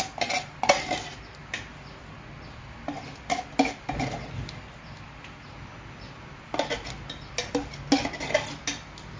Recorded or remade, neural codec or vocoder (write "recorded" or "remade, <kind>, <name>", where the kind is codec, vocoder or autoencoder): recorded